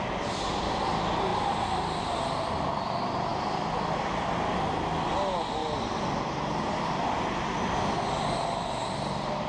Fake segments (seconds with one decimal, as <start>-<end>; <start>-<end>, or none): none